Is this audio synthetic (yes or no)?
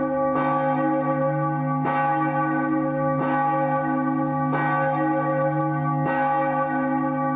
no